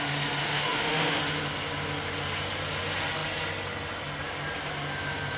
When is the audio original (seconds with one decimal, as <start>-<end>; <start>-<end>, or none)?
0.0-0.4; 1.2-5.4